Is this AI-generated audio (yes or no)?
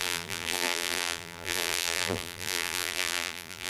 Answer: yes